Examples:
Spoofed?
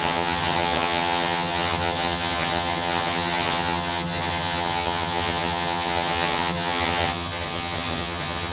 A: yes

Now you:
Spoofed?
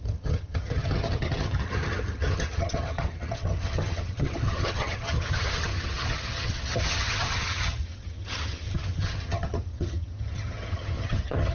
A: yes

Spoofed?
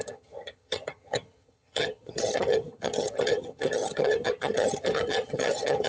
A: yes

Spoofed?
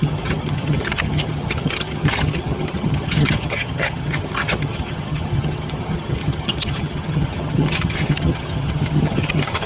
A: yes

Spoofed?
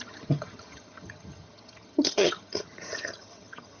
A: yes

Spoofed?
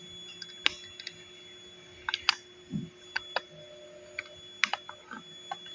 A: no